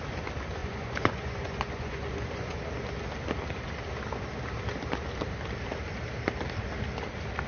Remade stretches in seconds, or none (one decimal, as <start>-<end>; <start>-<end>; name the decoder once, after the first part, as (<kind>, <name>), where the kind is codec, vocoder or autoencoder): 0.6-2.6 (vocoder, Vocos)